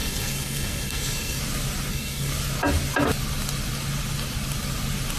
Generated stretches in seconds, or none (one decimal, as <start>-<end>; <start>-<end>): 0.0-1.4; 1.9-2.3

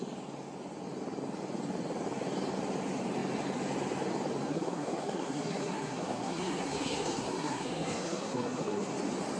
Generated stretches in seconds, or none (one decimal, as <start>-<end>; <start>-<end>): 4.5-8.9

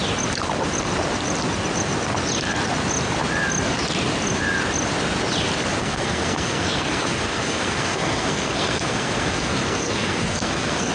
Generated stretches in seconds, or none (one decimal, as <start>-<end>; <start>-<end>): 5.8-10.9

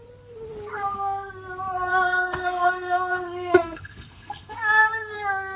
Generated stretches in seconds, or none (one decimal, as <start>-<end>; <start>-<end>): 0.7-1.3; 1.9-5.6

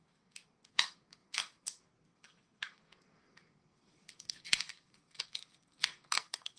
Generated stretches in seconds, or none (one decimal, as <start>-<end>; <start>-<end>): 0.0-6.6